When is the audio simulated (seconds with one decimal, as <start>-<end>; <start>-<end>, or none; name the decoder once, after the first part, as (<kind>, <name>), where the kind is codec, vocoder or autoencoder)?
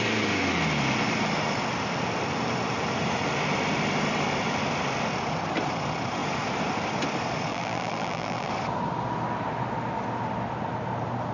7.5-8.5 (vocoder, BigVGAN v2)